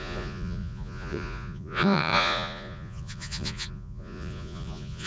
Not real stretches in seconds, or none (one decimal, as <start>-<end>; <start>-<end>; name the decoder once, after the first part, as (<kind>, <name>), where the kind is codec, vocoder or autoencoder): 0.0-5.1 (vocoder, Vocos)